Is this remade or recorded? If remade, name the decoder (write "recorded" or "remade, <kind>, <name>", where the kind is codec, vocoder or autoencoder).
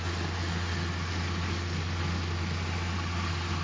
recorded